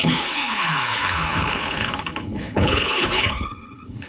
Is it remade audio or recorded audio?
remade